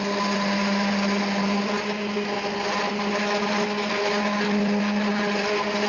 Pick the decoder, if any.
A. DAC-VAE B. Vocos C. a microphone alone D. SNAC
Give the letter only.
C